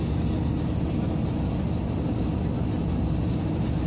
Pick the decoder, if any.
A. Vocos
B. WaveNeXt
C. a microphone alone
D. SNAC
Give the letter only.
C